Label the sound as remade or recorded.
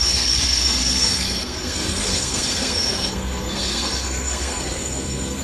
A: remade